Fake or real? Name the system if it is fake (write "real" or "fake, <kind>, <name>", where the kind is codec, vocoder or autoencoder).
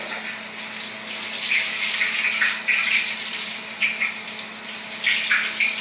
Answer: real